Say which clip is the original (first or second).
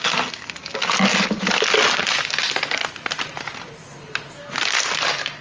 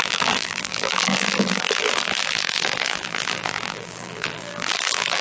first